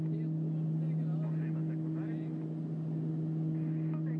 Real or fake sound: real